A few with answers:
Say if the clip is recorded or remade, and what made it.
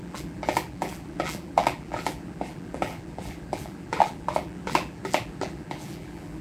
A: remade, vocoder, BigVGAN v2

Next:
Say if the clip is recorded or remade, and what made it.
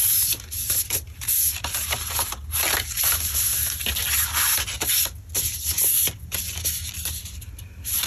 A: recorded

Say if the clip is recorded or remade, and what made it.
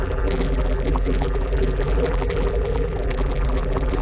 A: remade, vocoder, BigVGAN v2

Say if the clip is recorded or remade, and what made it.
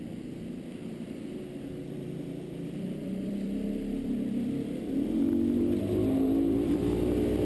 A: remade, vocoder, BigVGAN v2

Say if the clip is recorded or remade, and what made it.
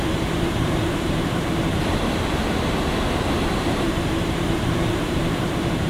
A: remade, vocoder, BigVGAN v2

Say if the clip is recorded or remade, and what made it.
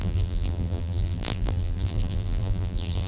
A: remade, vocoder, BigVGAN v2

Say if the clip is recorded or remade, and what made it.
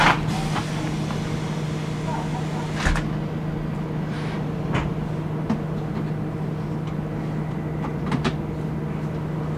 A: recorded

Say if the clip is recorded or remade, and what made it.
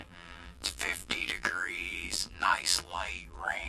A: remade, vocoder, BigVGAN v2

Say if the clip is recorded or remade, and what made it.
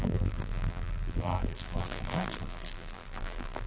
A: remade, vocoder, BigVGAN v2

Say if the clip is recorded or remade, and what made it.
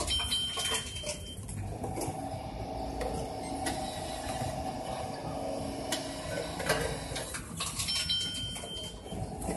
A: recorded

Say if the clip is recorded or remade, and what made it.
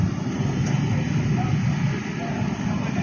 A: recorded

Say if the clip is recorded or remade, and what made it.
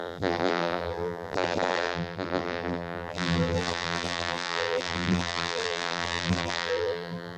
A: remade, vocoder, BigVGAN v2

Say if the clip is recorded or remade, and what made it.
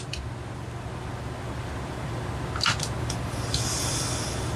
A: recorded